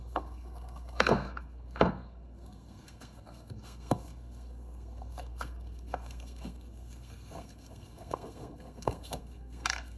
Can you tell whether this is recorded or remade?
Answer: remade